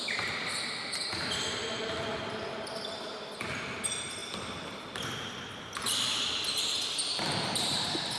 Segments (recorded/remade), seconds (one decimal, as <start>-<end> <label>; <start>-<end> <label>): 0.0-8.2 remade